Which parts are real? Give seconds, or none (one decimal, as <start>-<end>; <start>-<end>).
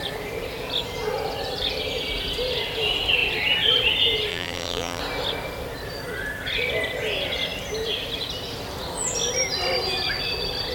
0.0-4.3; 5.0-10.7